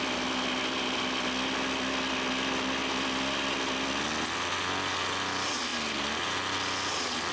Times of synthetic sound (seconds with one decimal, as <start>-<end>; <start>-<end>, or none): none